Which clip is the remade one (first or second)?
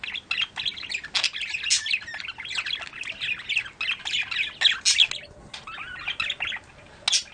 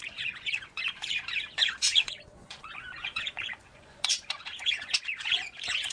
second